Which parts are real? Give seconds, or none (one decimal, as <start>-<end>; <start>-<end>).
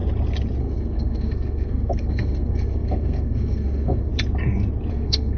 0.0-0.6; 4.1-4.9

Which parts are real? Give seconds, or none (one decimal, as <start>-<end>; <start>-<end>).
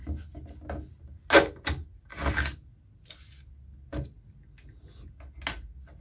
0.0-6.0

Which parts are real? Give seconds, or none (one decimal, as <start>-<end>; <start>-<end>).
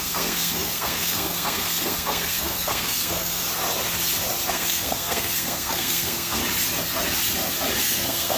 3.4-4.5; 6.4-7.8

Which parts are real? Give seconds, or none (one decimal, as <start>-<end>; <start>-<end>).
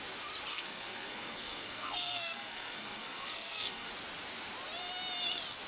0.0-0.5; 3.9-5.7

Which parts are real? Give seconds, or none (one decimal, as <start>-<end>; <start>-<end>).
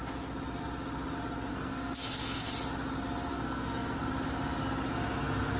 0.0-1.5; 2.5-3.3; 4.1-5.6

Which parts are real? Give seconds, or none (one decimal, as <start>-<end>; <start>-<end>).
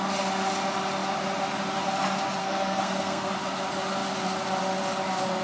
0.0-2.4; 3.3-5.4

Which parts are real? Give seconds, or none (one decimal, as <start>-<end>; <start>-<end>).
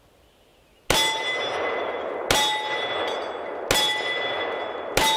0.0-5.2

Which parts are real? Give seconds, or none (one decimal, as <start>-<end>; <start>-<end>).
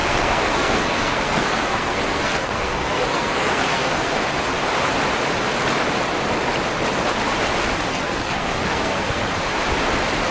4.1-7.9; 9.2-10.3